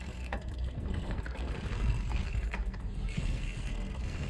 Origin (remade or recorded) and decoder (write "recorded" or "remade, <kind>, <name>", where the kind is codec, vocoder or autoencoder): remade, codec, SNAC